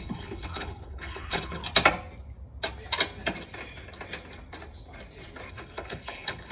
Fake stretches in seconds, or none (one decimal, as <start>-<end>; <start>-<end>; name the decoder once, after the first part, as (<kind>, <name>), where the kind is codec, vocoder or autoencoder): 0.0-1.6 (codec, HILCodec); 5.5-6.5